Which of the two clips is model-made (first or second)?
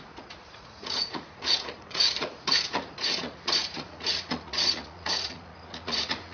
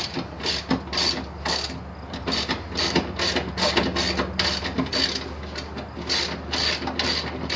first